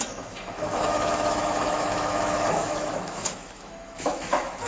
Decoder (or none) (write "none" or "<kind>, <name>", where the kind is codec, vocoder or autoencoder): autoencoder, DAC-VAE